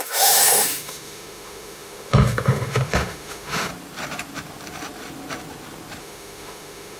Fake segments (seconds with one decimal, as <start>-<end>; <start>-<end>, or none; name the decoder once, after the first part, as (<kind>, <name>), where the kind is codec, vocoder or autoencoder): 0.0-3.7 (autoencoder, DAC-VAE); 6.0-7.0